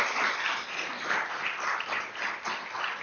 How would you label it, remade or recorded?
recorded